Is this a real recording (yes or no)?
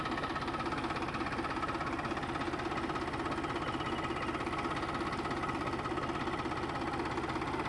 yes